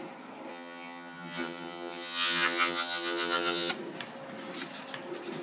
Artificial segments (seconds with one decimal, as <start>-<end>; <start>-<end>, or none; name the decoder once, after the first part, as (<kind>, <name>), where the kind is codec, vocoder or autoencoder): 0.5-3.7 (vocoder, HiFi-GAN)